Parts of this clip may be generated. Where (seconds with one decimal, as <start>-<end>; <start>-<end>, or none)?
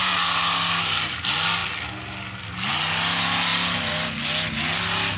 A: none